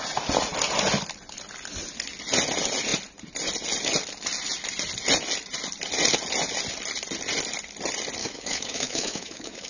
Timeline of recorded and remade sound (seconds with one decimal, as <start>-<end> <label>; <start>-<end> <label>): 0.0-8.2 recorded; 8.2-9.7 remade